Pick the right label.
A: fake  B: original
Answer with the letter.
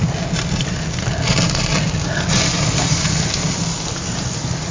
B